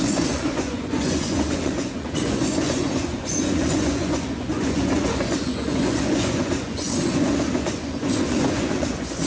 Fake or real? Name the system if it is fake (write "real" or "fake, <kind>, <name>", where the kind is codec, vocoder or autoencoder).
fake, vocoder, Vocos